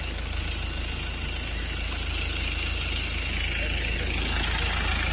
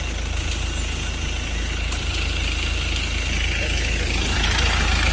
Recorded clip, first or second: first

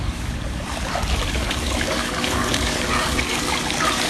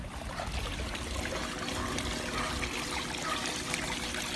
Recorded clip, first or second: second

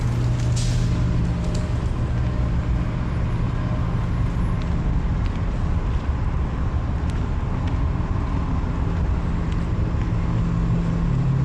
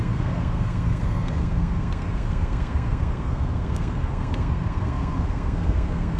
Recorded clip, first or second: first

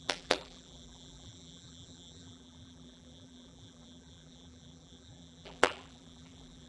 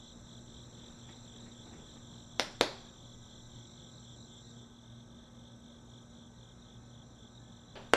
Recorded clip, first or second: second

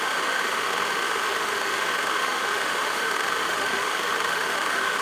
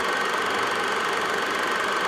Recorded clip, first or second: second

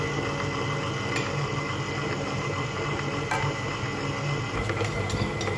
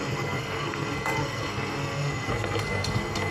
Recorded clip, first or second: first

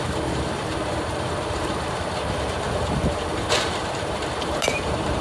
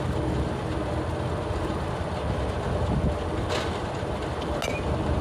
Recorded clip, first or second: second